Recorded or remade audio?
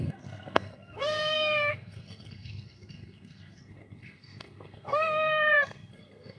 remade